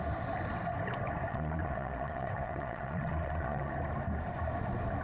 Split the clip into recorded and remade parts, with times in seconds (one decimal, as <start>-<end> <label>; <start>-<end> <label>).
0.0-1.3 recorded; 1.3-3.7 remade; 3.7-5.0 recorded